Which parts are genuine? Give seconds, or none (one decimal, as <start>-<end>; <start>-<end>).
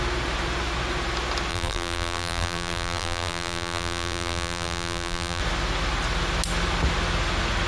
0.0-1.5; 5.4-7.7